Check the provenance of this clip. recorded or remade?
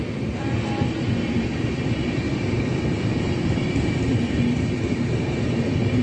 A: recorded